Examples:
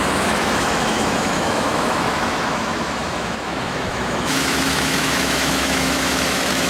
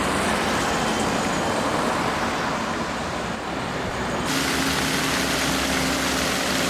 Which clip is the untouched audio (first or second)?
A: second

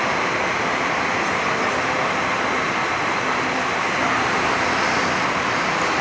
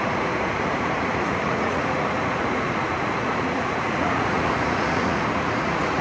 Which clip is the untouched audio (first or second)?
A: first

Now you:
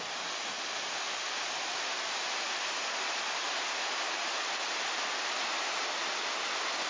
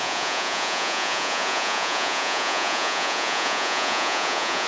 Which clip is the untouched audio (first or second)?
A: first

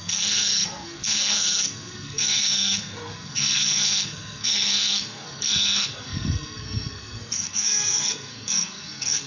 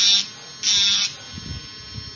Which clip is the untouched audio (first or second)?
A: second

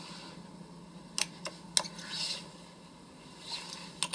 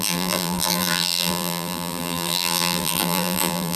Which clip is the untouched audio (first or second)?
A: first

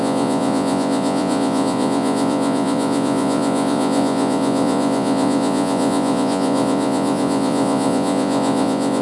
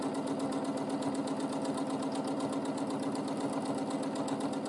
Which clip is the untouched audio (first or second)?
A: second